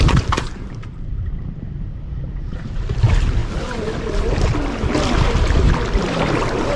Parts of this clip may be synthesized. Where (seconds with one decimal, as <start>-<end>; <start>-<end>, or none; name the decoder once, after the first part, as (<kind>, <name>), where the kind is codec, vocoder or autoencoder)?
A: 0.0-3.4 (vocoder, BigVGAN v2)